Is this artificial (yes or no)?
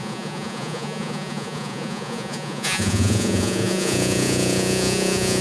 yes